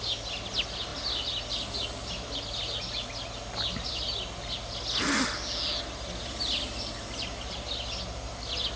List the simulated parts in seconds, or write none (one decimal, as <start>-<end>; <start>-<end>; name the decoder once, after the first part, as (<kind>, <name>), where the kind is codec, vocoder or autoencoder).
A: none